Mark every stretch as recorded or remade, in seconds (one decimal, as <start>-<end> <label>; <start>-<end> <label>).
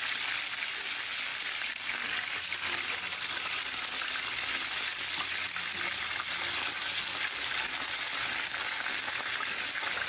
0.0-1.3 recorded; 1.3-3.5 remade; 3.5-10.1 recorded